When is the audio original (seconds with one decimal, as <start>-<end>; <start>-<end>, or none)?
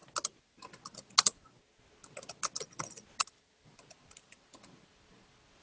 0.0-5.6